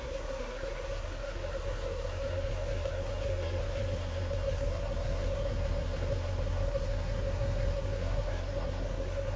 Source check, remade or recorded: remade